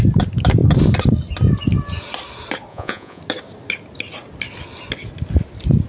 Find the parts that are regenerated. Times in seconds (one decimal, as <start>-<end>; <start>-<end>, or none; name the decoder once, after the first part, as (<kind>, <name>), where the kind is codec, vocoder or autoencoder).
2.7-3.2 (vocoder, Vocos)